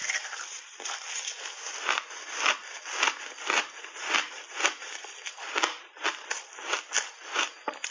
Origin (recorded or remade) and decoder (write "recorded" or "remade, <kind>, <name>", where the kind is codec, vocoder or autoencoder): recorded